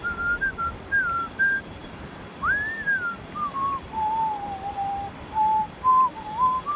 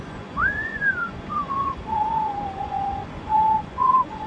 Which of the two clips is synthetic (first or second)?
second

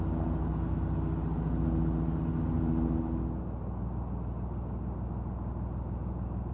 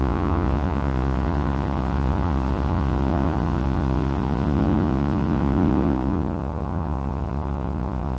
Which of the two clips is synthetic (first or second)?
second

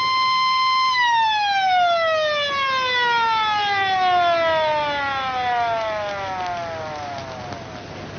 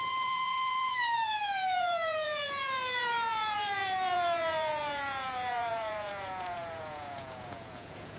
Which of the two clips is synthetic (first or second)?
second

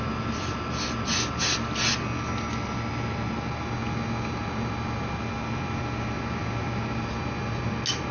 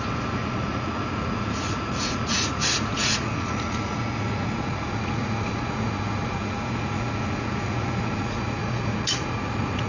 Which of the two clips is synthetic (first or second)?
second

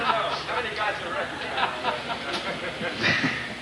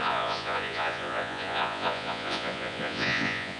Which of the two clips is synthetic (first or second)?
second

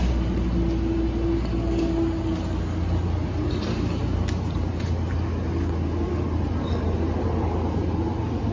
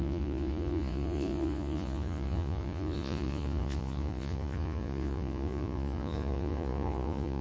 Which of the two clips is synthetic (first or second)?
second